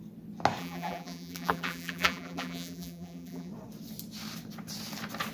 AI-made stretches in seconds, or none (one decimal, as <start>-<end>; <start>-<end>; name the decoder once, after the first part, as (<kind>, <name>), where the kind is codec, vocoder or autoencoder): 0.6-3.5 (vocoder, BigVGAN v2)

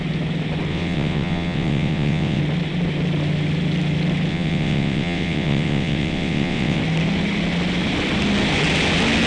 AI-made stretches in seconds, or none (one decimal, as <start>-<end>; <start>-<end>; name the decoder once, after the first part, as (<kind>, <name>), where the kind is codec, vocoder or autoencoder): 0.7-2.4 (vocoder, WaveNeXt); 4.3-6.8

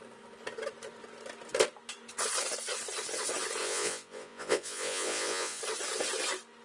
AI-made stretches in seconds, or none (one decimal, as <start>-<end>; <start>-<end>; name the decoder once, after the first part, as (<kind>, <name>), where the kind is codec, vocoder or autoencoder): 3.6-5.6 (vocoder, Vocos)

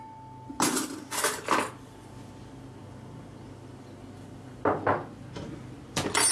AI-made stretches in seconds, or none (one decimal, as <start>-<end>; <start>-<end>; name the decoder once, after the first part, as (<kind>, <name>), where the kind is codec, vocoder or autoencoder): none

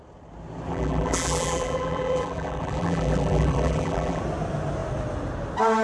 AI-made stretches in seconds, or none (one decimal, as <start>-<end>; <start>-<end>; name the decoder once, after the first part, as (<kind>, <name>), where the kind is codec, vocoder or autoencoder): 0.7-4.2 (vocoder, BigVGAN v2)

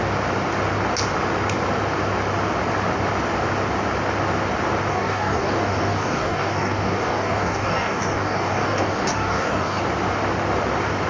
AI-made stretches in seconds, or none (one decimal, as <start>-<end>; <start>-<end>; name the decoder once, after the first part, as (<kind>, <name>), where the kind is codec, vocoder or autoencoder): 4.9-9.8 (codec, DAC)

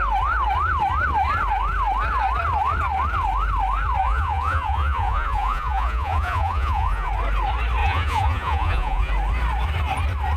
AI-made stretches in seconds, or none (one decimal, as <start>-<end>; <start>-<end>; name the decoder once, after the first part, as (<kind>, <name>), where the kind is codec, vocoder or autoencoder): 4.0-7.1 (vocoder, Vocos); 7.8-9.1

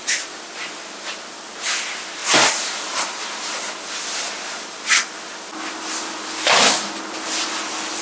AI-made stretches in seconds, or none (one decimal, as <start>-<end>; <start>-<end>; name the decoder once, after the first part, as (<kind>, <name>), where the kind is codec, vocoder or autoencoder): none